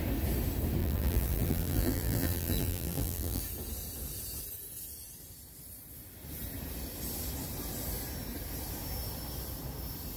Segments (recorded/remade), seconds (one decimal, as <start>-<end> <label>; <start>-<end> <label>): 0.0-0.8 recorded; 0.8-3.4 remade; 3.4-10.2 recorded